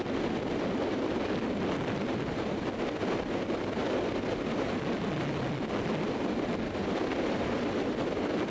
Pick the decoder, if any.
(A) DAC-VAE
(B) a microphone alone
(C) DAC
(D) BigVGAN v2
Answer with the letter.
B